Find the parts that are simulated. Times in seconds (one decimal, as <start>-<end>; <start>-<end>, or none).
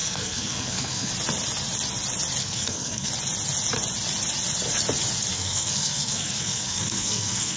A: 0.0-1.1; 2.4-3.1; 5.3-7.6